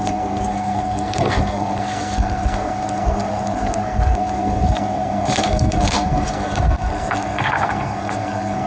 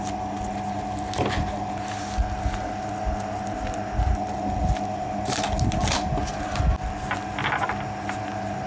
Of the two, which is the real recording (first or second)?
second